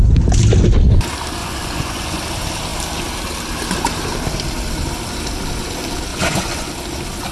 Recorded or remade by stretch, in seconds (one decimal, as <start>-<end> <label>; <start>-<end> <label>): 0.0-1.4 recorded; 1.4-2.2 remade; 2.2-6.1 recorded; 6.1-6.7 remade; 6.7-7.3 recorded